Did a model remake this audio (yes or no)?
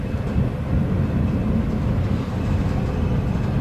no